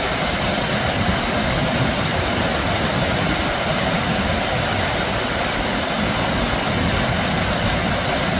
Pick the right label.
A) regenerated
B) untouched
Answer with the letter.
B